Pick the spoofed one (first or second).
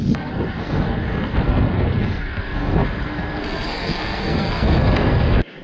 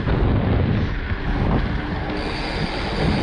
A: first